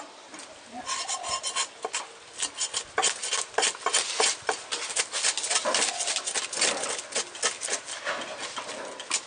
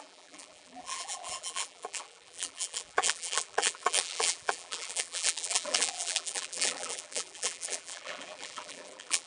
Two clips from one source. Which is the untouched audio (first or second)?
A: first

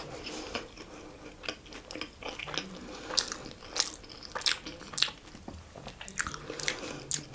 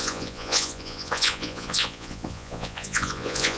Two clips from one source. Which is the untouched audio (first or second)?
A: first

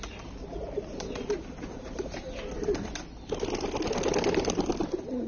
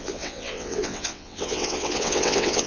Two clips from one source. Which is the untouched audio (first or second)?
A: first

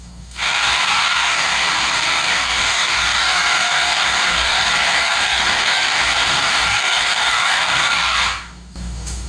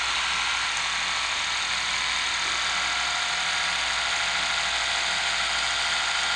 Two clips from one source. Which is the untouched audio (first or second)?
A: second